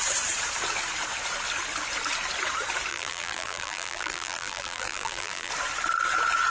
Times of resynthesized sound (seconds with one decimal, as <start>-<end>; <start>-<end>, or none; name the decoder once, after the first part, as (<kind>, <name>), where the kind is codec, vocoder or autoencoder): 2.9-5.5 (vocoder, BigVGAN v2)